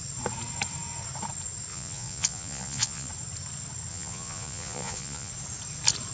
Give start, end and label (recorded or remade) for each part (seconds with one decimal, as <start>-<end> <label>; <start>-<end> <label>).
0.0-1.7 recorded; 1.7-3.1 remade; 3.1-3.9 recorded; 3.9-5.3 remade; 5.3-6.1 recorded